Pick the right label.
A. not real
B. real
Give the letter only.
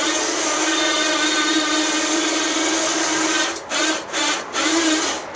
B